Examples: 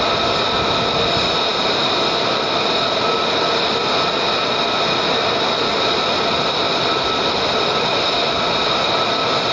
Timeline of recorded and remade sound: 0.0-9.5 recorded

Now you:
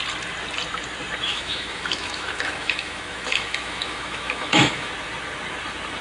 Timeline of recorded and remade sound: 0.0-1.3 recorded; 1.3-4.9 remade; 4.9-6.0 recorded